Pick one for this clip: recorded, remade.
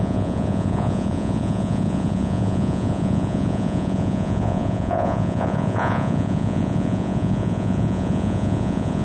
remade